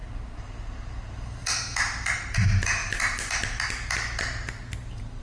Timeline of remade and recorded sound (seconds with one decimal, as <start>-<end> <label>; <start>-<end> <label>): 0.0-1.4 recorded; 1.4-2.2 remade; 2.2-5.2 recorded